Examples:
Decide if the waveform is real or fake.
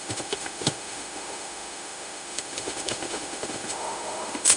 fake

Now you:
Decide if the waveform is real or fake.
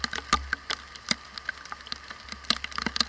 real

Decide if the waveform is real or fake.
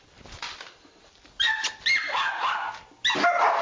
real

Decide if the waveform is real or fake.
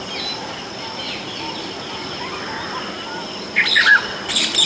real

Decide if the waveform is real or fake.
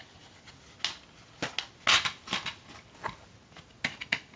real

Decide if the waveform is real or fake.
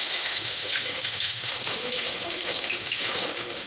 fake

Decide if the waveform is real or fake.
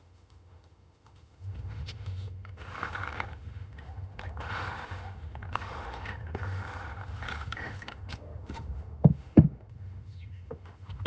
fake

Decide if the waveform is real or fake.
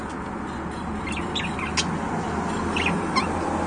real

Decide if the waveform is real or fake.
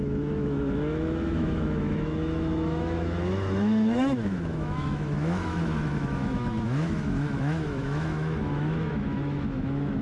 fake